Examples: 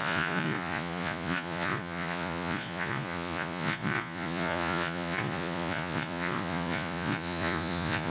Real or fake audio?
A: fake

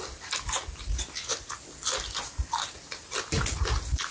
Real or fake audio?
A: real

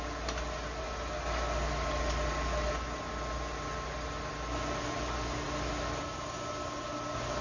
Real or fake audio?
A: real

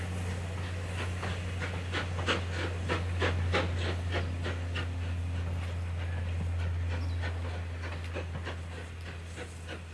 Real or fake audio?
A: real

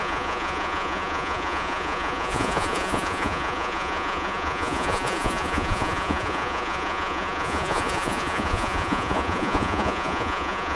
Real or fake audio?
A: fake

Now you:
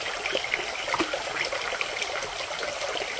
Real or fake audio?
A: real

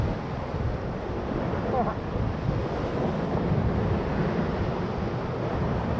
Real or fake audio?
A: real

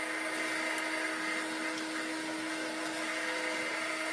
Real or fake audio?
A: real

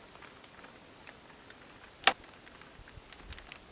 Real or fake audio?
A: real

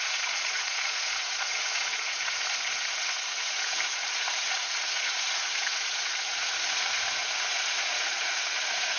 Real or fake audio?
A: fake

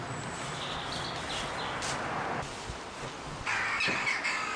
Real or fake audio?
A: real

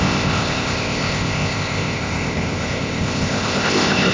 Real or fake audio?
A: fake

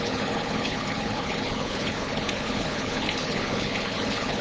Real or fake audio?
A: fake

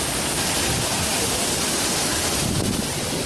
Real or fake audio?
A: real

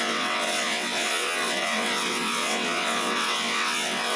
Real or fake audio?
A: fake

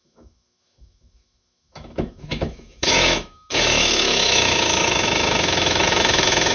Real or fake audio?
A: fake